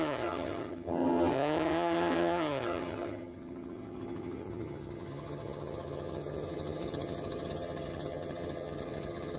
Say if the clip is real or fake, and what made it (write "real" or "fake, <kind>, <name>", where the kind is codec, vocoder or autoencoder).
fake, vocoder, HiFi-GAN